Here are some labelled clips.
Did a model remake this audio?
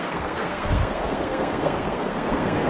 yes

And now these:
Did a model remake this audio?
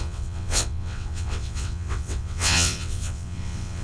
yes